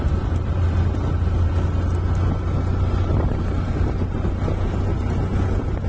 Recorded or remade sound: recorded